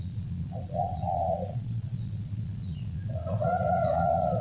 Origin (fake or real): fake